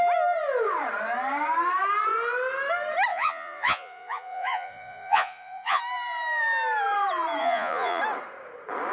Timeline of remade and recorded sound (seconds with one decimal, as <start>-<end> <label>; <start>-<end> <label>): 0.0-3.1 recorded; 3.1-5.8 remade; 5.8-7.4 recorded; 7.4-8.0 remade; 8.0-8.9 recorded